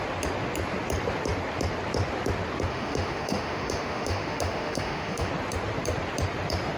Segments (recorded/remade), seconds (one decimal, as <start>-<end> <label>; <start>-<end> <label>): 0.0-2.7 recorded; 2.7-5.3 remade; 5.3-6.8 recorded